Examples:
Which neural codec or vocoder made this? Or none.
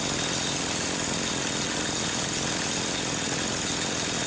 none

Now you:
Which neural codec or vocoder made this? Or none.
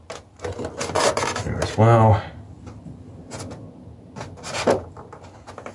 none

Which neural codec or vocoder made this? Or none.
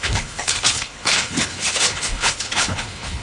codec, HILCodec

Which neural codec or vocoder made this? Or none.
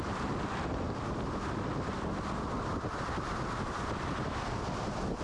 none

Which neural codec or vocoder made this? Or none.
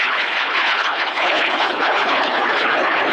codec, HILCodec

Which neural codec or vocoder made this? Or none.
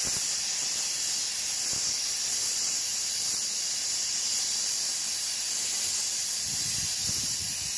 none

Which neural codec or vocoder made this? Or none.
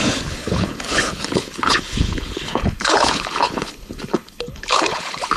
codec, HILCodec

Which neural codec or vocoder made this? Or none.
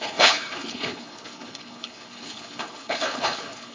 codec, HILCodec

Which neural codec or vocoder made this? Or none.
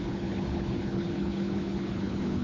codec, HILCodec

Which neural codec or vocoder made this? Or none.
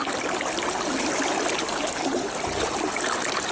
none